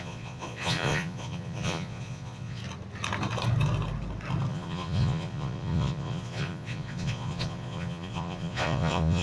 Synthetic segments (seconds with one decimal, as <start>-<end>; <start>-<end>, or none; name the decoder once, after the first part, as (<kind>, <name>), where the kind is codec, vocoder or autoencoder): 0.0-2.6 (vocoder, Vocos); 4.5-9.2